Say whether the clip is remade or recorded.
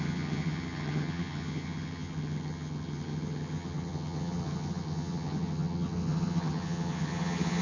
remade